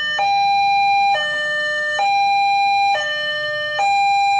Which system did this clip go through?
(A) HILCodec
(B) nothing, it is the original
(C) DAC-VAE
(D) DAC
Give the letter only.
C